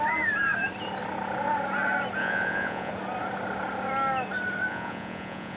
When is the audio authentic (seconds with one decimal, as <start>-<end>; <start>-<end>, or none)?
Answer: 0.0-2.2; 2.9-4.7